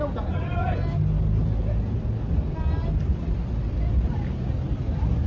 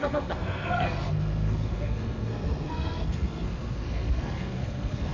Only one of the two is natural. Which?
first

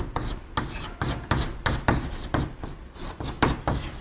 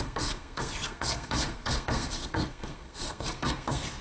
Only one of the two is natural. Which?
first